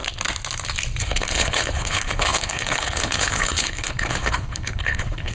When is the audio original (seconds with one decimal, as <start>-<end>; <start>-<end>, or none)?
0.0-1.0